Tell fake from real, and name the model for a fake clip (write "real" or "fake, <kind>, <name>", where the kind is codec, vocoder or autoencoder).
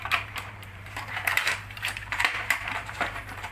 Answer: fake, vocoder, BigVGAN v2